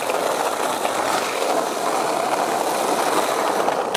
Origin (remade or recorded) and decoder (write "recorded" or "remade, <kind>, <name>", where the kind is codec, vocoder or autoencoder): recorded